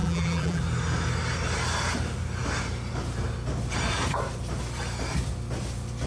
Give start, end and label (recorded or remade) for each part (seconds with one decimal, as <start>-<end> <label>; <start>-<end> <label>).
0.0-0.6 remade; 0.6-6.1 recorded